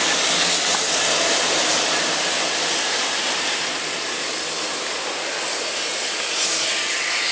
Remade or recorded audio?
recorded